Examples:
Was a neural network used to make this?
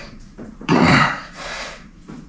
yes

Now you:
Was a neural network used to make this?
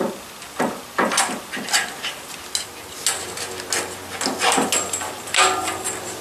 no